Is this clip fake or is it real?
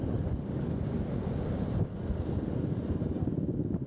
real